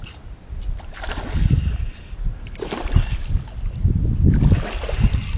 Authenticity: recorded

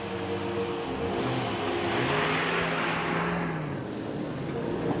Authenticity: recorded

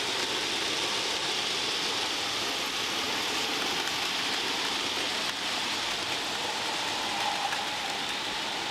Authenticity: recorded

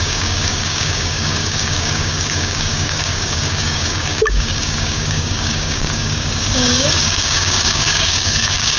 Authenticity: remade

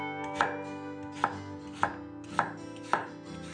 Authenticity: recorded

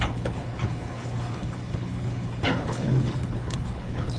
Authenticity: remade